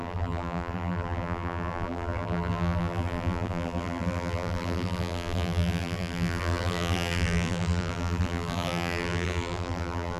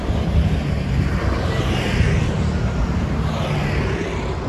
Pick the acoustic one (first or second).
second